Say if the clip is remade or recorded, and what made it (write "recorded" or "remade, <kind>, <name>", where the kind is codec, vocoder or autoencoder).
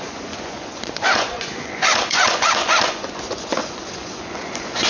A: remade, vocoder, Vocos